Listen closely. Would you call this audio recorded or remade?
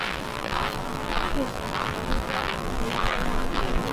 remade